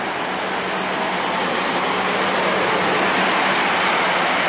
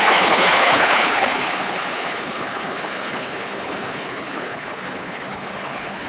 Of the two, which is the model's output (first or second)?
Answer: second